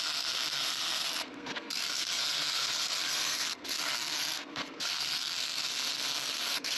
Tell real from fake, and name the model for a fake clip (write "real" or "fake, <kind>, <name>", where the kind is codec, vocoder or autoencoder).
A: fake, codec, SNAC